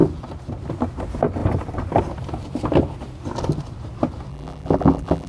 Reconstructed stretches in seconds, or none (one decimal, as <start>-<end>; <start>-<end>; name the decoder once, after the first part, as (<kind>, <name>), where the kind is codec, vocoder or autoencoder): 4.3-5.3 (vocoder, BigVGAN v2)